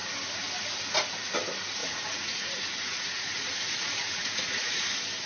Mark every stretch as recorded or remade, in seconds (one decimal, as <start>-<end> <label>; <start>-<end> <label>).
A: 0.0-1.8 recorded; 1.8-4.8 remade; 4.8-5.3 recorded